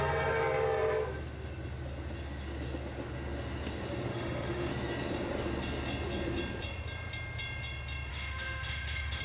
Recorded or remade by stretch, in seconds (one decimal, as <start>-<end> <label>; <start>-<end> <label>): 0.0-4.1 recorded; 4.1-4.7 remade; 4.7-8.1 recorded; 8.1-9.2 remade